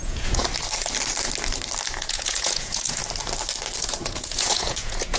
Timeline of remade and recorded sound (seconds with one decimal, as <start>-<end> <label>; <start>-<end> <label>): 0.0-0.4 remade; 0.4-2.0 recorded; 2.0-3.0 remade; 3.0-3.8 recorded; 3.8-5.2 remade